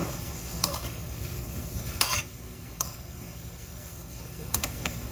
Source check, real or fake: fake